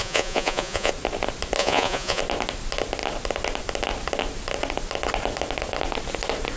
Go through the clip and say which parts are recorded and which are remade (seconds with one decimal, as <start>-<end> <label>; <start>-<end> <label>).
0.0-0.9 remade; 0.9-1.6 recorded; 1.6-2.2 remade; 2.2-6.6 recorded